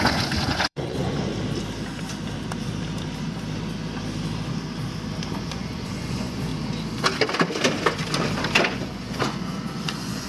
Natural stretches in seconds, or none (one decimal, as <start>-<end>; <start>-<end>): 1.3-5.4; 6.5-8.6